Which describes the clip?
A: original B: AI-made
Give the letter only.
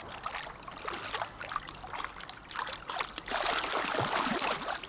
A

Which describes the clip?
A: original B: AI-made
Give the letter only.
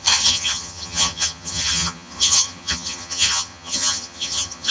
B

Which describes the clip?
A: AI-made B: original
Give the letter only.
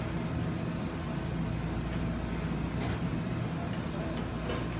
B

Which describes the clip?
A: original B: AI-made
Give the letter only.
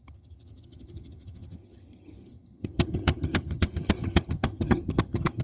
B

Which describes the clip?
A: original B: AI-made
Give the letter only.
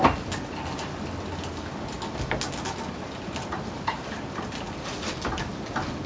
A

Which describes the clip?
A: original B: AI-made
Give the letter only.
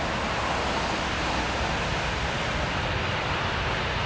A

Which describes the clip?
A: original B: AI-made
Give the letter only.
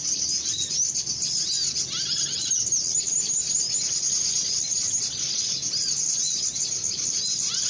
A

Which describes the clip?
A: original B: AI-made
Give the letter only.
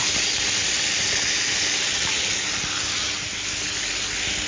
A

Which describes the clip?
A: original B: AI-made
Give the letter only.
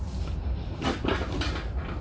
A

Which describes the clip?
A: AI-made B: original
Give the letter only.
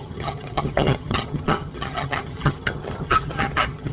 A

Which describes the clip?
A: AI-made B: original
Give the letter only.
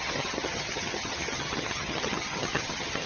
A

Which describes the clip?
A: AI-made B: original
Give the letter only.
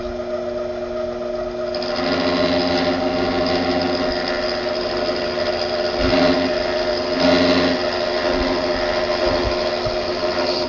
B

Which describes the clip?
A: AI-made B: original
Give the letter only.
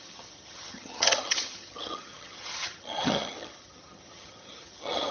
A